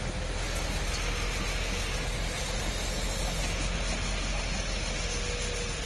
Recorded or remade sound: recorded